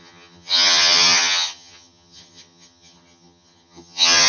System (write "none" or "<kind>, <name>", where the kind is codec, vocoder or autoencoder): vocoder, HiFi-GAN